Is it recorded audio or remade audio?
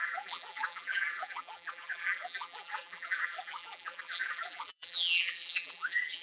remade